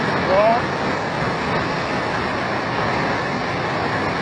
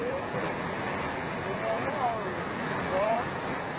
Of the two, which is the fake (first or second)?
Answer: second